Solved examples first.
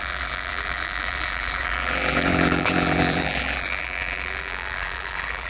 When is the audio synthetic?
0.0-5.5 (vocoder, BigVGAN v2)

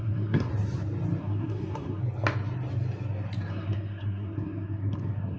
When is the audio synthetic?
0.0-0.5 (codec, SNAC); 1.2-2.0; 3.5-5.4

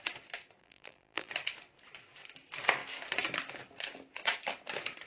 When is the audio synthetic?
0.6-1.3 (vocoder, BigVGAN v2)

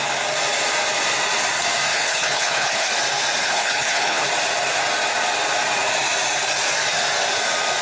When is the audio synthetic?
1.9-2.9 (codec, HILCodec); 3.4-4.3

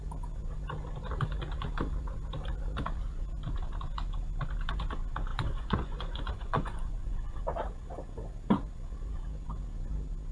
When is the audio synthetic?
5.3-7.4 (vocoder, Vocos)

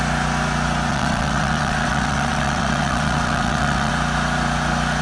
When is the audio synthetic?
0.9-3.9 (vocoder, WaveNeXt)

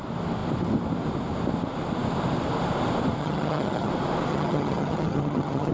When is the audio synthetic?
3.2-3.9 (vocoder, HiFi-GAN); 4.3-5.7